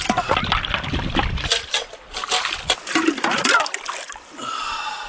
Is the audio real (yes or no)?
yes